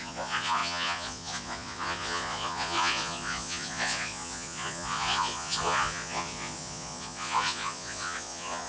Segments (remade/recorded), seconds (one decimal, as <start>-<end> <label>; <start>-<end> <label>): 0.0-8.7 remade